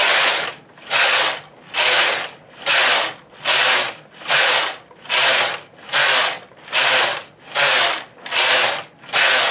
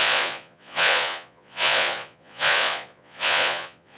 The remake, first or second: second